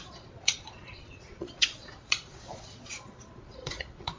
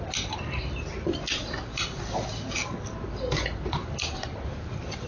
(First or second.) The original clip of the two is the second